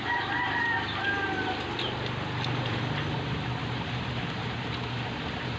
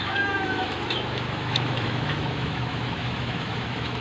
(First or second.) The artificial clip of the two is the second